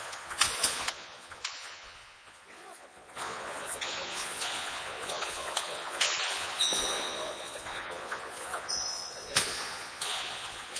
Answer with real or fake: fake